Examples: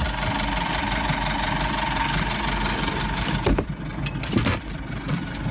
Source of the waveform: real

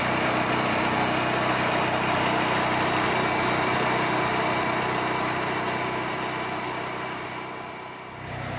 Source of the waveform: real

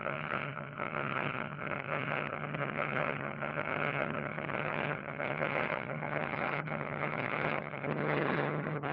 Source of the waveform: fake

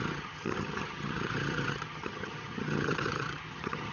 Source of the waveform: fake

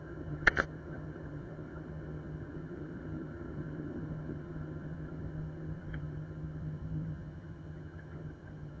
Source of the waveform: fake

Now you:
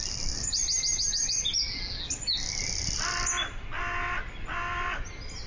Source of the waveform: real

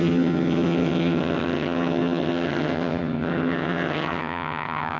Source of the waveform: fake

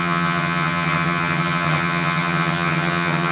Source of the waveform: fake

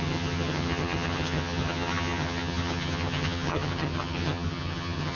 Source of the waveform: fake